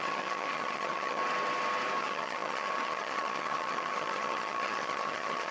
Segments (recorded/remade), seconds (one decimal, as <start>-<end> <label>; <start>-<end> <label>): 0.0-1.2 remade; 1.2-2.0 recorded; 2.0-5.5 remade